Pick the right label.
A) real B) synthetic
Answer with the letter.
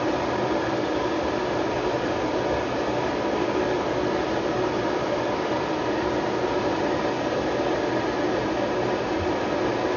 A